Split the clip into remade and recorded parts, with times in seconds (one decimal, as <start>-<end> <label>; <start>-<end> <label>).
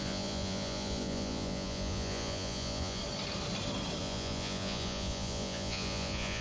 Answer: 0.0-3.0 remade; 3.0-4.0 recorded; 4.0-6.4 remade